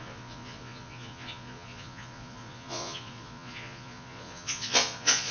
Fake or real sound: fake